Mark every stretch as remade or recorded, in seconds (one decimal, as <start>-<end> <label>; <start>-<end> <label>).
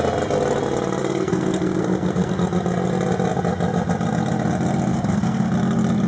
0.0-1.0 recorded; 1.0-2.3 remade; 2.3-4.9 recorded; 4.9-5.5 remade; 5.5-6.1 recorded